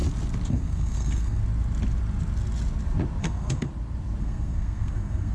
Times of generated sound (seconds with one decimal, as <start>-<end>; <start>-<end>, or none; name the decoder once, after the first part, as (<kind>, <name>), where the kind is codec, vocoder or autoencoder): 0.5-1.4 (codec, SNAC); 3.2-3.7; 4.2-5.3